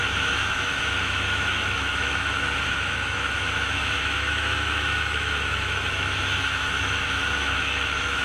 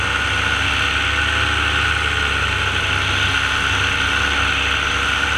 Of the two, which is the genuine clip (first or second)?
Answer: second